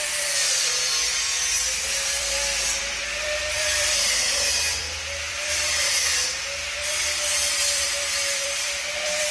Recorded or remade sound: remade